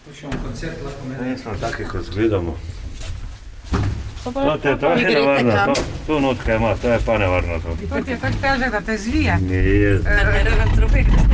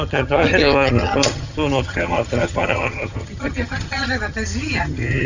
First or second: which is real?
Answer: first